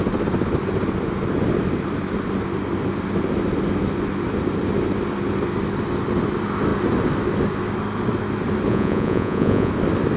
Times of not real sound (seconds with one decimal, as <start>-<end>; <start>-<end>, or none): 8.7-9.7